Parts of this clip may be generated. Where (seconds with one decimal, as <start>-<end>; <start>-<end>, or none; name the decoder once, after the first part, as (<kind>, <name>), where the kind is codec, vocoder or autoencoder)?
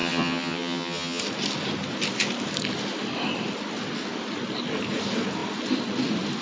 0.0-1.2 (vocoder, HiFi-GAN)